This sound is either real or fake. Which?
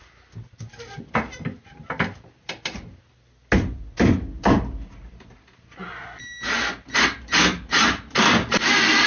real